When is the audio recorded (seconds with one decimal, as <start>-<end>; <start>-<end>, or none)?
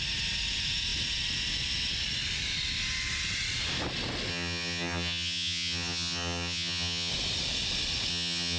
0.0-4.3; 7.1-8.1